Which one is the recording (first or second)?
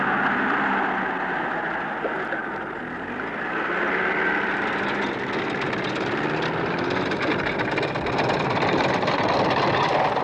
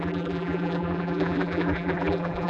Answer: first